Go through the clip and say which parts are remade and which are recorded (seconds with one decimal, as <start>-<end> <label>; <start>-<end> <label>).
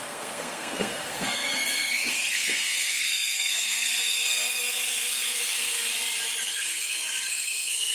0.0-5.9 remade; 5.9-6.4 recorded; 6.4-7.9 remade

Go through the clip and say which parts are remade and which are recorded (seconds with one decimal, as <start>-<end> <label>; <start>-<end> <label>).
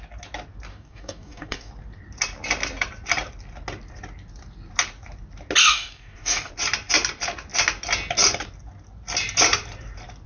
0.0-0.7 recorded; 0.7-1.7 remade; 1.7-5.6 recorded; 5.6-6.5 remade; 6.5-10.3 recorded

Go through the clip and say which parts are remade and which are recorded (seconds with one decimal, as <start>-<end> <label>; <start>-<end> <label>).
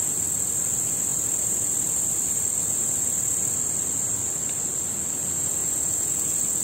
0.0-6.6 recorded